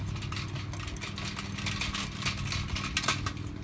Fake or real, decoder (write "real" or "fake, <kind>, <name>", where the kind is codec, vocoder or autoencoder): real